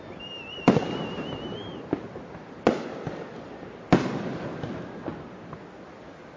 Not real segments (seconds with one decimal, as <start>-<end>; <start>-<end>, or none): none